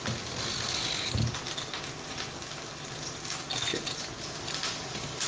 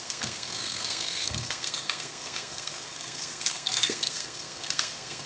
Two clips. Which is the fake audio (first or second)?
second